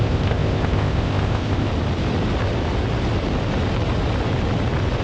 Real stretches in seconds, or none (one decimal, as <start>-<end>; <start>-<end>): 1.7-5.0